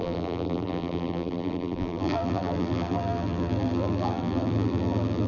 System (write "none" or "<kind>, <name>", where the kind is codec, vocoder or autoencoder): vocoder, BigVGAN v2